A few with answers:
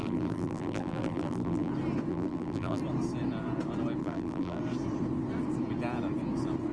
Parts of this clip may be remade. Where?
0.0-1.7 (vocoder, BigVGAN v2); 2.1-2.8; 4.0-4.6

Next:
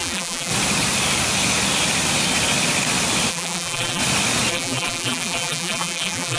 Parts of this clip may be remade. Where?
0.0-0.5 (vocoder, BigVGAN v2); 3.3-4.0; 4.5-6.4

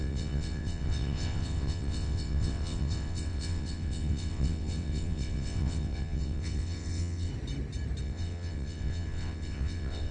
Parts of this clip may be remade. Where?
0.0-7.3 (vocoder, WaveNeXt); 8.0-10.1

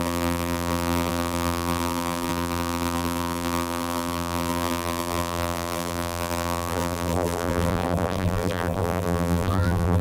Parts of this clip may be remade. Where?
0.0-10.0 (vocoder, BigVGAN v2)